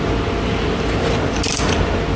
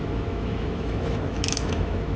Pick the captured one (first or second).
first